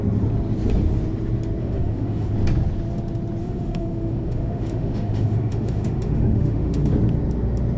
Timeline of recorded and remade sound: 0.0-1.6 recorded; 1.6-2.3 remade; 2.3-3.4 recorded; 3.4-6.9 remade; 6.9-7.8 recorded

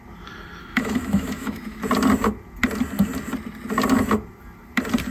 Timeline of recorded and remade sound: 0.0-0.6 recorded; 0.6-1.8 remade; 1.8-5.1 recorded

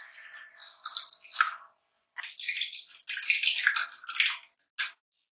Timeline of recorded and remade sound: 0.0-5.3 recorded

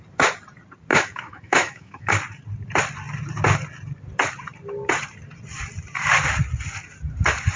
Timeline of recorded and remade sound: 0.0-0.9 recorded; 0.9-2.1 remade; 2.1-7.6 recorded

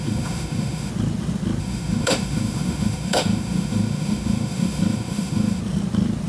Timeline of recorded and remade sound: 0.0-0.9 remade; 0.9-1.6 recorded; 1.6-5.6 remade; 5.6-6.3 recorded

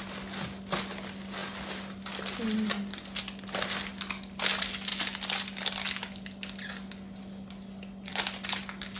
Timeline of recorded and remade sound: 0.0-9.0 recorded